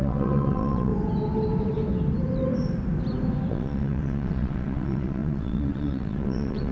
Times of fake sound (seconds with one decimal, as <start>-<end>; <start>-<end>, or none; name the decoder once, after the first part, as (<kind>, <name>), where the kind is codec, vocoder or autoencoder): 0.0-0.9 (vocoder, WaveNeXt); 3.5-6.7

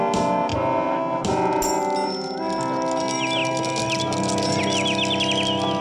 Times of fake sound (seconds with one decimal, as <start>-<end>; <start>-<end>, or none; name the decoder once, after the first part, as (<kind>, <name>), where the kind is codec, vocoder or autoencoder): none

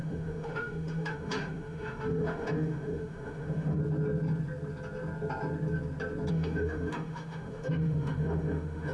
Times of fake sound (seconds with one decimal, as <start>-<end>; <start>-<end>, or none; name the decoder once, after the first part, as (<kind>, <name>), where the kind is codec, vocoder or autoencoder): 0.0-3.8 (autoencoder, DAC-VAE); 6.3-8.9

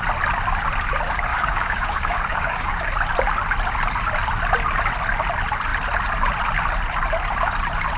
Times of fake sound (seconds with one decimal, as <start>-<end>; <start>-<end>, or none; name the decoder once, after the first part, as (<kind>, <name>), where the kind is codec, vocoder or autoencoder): 1.3-2.8 (codec, DAC)